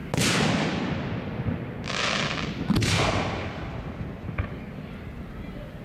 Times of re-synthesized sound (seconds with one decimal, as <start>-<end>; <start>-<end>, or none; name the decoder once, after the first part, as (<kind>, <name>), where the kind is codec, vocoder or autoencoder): none